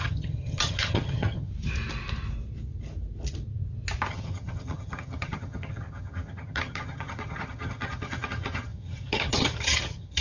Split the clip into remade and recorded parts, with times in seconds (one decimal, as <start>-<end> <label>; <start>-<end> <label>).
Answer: 0.0-1.5 remade; 1.5-4.1 recorded; 4.1-10.2 remade